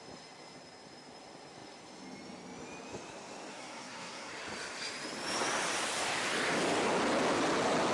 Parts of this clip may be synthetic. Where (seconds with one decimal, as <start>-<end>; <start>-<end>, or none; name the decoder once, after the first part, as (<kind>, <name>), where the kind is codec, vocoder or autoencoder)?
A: 3.5-4.3 (codec, SNAC)